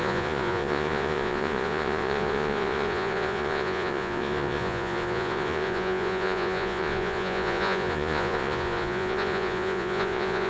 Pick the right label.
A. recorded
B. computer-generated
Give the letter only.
B